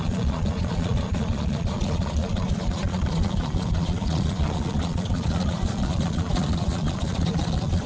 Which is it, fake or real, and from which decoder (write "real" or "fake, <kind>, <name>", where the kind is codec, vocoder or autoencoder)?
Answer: fake, vocoder, Vocos